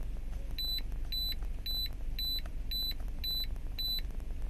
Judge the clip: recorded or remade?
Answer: recorded